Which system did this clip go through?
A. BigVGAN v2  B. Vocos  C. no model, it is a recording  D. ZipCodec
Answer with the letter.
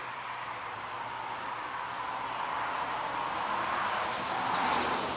A